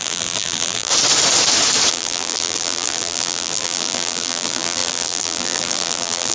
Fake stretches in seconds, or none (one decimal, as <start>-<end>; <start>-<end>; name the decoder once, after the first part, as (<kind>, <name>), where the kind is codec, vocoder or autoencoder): 0.0-0.9 (vocoder, BigVGAN v2); 1.9-6.3